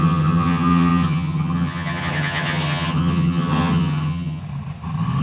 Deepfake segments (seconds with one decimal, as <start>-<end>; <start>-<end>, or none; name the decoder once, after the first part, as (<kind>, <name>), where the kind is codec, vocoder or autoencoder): 0.0-4.4 (vocoder, HiFi-GAN)